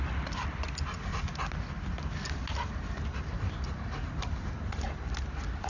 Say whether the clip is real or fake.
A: real